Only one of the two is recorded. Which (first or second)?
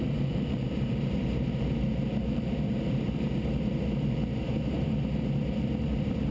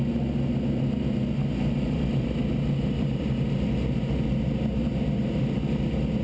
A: second